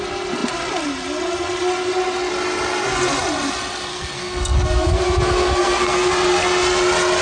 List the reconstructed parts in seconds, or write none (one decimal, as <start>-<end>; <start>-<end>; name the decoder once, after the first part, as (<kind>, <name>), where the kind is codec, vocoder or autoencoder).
3.9-6.1 (codec, SNAC)